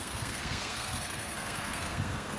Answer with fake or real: fake